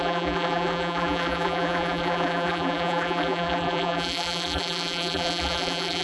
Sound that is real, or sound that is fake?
fake